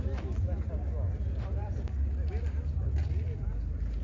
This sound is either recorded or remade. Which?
recorded